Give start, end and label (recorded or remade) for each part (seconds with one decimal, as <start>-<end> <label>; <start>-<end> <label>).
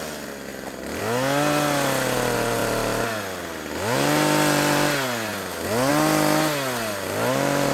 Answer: 0.0-7.7 recorded